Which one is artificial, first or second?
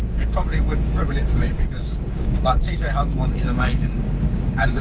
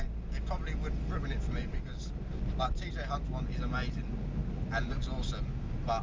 first